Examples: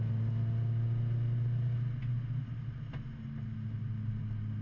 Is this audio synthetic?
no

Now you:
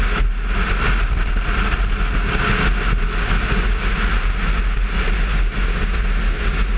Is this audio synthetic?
no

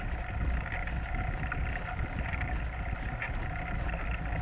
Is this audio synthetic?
no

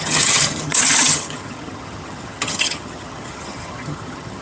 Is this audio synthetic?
yes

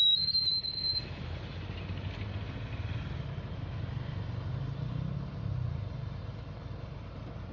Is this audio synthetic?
no